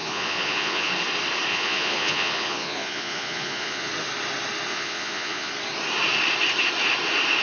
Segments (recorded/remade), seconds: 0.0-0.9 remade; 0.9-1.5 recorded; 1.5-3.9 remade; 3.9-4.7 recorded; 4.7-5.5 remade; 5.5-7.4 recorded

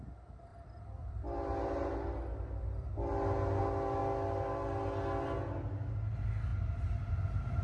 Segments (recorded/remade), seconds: 0.0-7.6 recorded

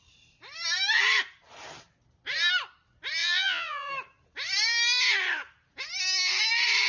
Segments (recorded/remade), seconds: 0.0-3.2 recorded; 3.2-3.9 remade; 3.9-6.9 recorded

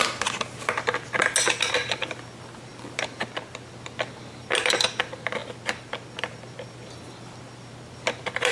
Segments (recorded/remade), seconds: 0.0-8.5 recorded